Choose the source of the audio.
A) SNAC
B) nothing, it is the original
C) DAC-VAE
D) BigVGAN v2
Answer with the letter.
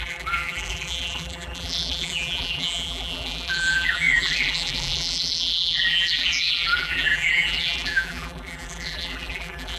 D